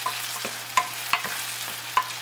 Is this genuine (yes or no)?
yes